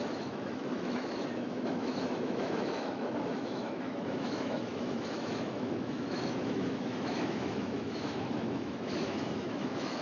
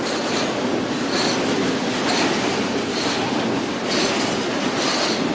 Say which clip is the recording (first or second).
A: second